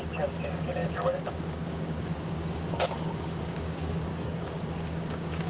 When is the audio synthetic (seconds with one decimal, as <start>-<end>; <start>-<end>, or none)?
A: 0.0-5.5